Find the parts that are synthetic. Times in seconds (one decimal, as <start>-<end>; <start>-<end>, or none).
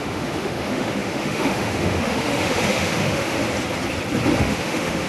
0.0-3.4; 4.4-5.1